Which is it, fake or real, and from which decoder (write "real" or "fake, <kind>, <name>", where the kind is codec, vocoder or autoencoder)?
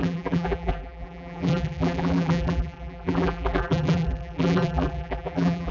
fake, vocoder, BigVGAN v2